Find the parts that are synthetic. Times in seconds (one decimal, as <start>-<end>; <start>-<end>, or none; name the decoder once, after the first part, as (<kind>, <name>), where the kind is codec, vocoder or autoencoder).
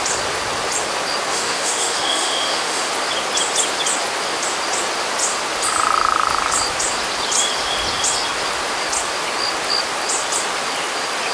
1.3-2.9 (autoencoder, DAC-VAE)